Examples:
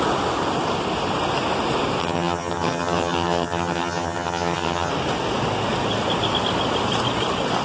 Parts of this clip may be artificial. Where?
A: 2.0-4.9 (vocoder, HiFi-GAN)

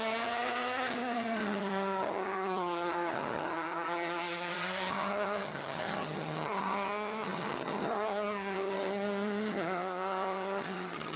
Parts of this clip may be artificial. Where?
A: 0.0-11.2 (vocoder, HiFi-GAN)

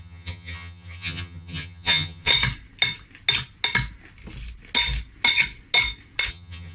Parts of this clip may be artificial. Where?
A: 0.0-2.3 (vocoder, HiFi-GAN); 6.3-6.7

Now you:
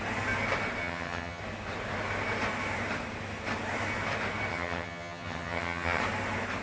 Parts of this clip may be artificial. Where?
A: 0.8-1.4 (vocoder, HiFi-GAN); 4.5-6.0